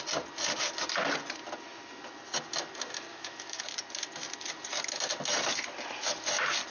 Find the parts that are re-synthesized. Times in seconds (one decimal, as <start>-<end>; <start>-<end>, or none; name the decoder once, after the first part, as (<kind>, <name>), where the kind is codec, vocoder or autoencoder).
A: 3.1-3.6 (autoencoder, DAC-VAE)